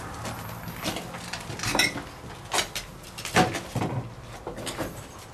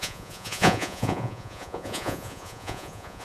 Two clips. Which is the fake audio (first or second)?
second